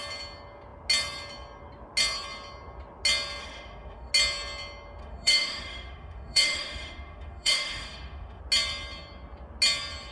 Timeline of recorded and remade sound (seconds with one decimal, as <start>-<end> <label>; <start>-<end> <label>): 0.0-3.4 recorded; 3.4-4.1 remade; 4.1-5.0 recorded; 5.0-8.4 remade; 8.4-10.1 recorded